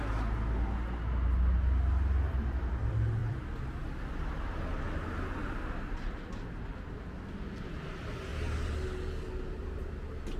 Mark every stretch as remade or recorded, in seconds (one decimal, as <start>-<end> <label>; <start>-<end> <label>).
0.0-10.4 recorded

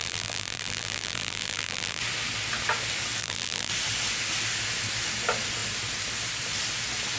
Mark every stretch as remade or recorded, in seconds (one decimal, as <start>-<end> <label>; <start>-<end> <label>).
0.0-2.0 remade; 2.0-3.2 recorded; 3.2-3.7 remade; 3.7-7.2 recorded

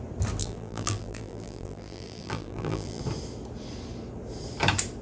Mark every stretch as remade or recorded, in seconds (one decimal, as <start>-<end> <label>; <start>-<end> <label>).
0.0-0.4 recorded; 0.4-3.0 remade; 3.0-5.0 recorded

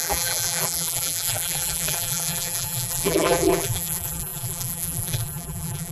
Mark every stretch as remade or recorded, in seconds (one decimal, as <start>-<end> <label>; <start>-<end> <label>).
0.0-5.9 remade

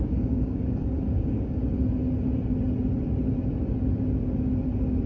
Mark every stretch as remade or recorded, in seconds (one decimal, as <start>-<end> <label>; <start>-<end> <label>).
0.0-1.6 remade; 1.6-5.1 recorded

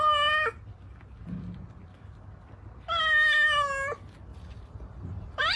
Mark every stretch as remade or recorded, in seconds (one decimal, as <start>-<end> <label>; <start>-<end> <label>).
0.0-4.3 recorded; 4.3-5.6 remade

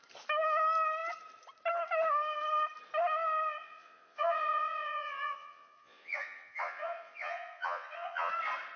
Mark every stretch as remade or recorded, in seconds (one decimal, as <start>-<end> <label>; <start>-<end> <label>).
0.0-3.6 recorded; 3.6-8.3 remade; 8.3-8.8 recorded